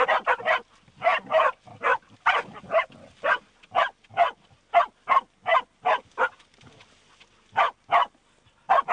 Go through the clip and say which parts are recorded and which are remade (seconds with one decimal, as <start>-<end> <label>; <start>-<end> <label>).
0.0-8.9 recorded